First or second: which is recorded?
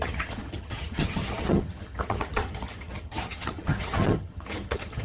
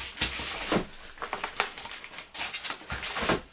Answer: second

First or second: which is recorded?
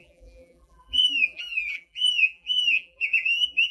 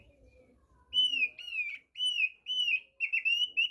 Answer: second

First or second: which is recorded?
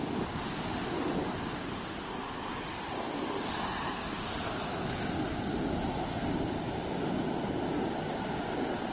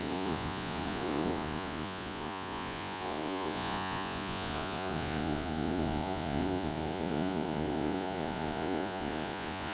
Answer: first